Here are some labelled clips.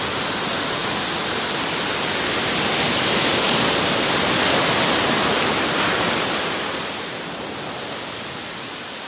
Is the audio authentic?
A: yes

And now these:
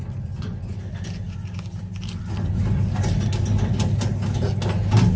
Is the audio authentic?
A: yes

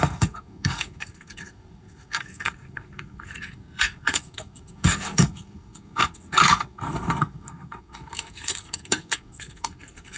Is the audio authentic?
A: no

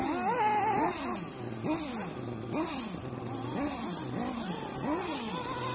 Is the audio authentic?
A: yes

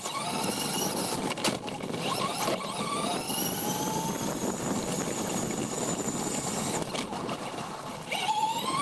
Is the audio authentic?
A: yes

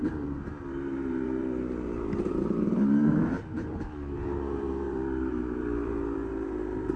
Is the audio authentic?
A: no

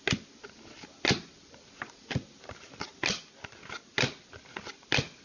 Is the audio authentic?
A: yes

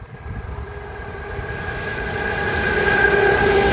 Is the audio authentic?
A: no